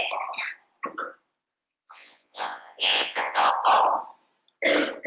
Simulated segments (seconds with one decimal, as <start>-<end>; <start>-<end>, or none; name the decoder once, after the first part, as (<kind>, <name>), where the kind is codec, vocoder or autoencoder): 1.6-3.5 (vocoder, Vocos)